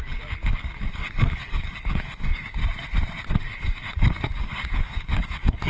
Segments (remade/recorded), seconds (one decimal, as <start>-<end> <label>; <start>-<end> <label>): 0.0-2.6 remade; 2.6-3.3 recorded; 3.3-5.7 remade